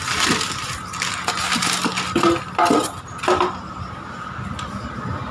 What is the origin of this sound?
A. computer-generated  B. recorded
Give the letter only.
B